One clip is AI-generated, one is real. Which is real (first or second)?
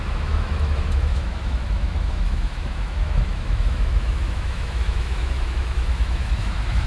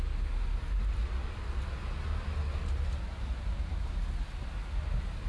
second